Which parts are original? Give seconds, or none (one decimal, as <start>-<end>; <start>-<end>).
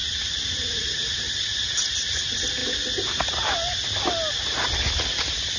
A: 0.0-5.6